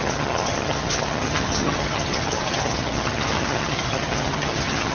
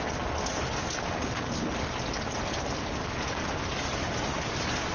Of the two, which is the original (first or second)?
second